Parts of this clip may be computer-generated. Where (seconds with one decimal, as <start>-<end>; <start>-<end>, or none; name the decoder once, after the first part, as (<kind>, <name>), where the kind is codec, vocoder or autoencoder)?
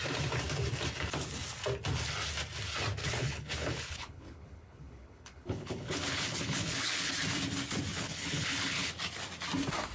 3.0-7.1 (codec, HILCodec); 7.9-8.9